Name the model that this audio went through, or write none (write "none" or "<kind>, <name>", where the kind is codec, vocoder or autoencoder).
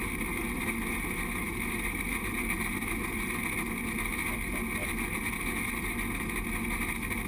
none